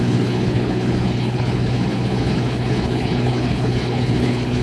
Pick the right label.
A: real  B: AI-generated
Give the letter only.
B